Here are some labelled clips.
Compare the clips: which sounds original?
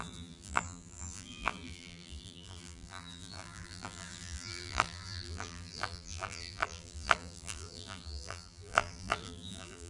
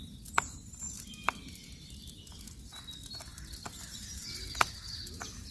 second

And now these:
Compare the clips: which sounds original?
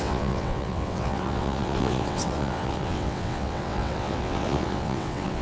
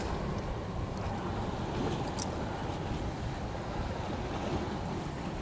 second